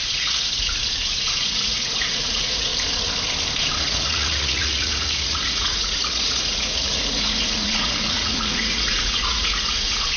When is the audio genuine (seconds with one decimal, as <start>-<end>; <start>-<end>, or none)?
2.7-3.8